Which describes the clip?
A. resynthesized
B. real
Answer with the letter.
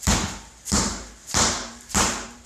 A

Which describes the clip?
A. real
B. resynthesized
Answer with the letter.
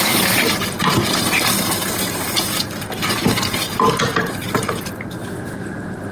A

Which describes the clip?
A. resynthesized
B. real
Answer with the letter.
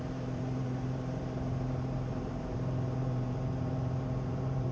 A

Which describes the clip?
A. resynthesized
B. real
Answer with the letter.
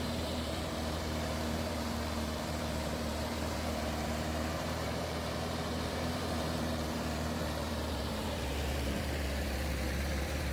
A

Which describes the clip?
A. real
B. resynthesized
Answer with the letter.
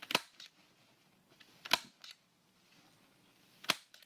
A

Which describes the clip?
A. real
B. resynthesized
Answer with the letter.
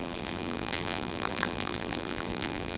B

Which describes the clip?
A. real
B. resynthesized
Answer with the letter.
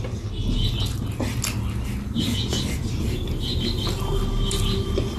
A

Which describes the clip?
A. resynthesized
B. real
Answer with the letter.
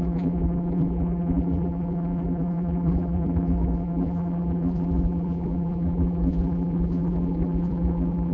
A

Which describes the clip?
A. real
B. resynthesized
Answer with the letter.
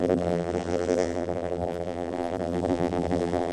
B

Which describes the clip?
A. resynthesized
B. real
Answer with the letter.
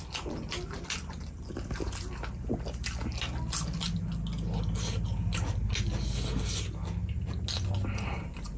B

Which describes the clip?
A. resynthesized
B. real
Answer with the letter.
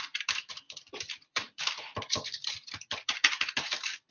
A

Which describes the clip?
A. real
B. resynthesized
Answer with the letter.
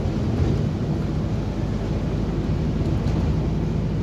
A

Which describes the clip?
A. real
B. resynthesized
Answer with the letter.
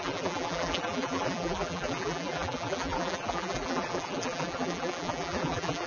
B